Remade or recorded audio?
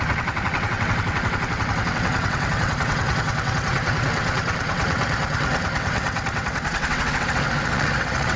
remade